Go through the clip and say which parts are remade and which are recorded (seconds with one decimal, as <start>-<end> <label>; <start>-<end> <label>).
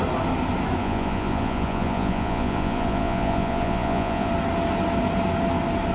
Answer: 0.0-0.8 recorded; 0.8-4.3 remade; 4.3-5.9 recorded